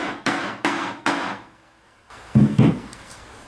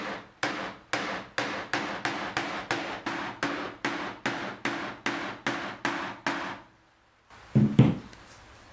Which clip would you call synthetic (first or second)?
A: first